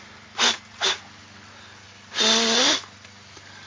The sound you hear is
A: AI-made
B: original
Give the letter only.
B